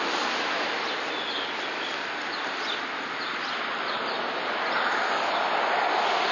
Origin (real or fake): real